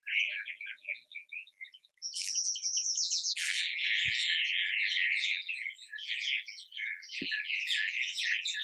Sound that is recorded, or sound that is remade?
remade